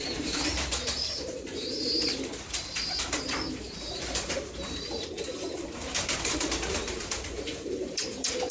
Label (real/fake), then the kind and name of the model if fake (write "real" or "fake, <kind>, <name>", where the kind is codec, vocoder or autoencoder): fake, vocoder, BigVGAN v2